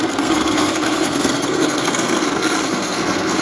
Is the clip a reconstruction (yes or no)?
yes